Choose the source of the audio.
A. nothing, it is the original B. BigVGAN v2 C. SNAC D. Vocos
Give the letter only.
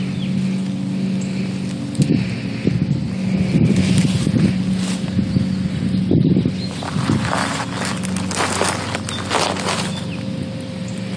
A